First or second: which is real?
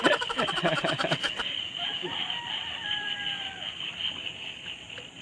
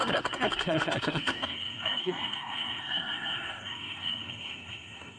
first